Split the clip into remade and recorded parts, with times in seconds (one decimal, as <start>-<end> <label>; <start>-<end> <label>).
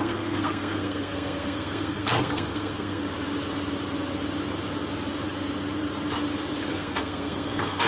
0.0-3.0 remade; 3.0-6.7 recorded; 6.7-7.9 remade